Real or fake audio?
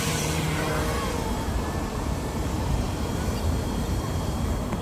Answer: fake